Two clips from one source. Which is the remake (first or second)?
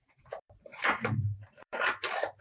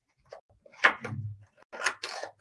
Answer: first